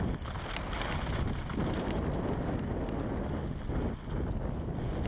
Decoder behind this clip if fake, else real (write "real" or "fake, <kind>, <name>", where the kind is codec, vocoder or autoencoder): real